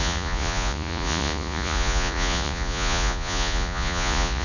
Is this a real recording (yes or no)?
no